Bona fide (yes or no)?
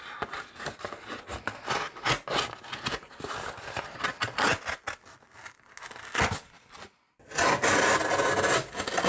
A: yes